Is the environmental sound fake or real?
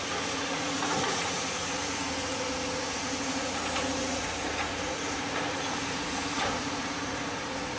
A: fake